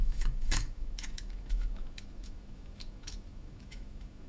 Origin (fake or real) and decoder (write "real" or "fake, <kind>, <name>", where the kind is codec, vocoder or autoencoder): fake, autoencoder, DAC-VAE